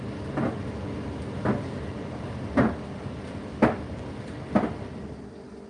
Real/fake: real